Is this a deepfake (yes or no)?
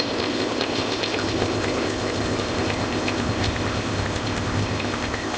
yes